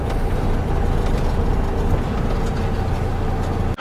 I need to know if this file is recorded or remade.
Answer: recorded